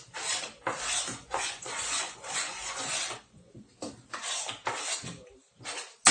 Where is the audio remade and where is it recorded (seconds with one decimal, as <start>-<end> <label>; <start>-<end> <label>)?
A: 0.0-1.1 recorded; 1.1-3.9 remade; 3.9-6.1 recorded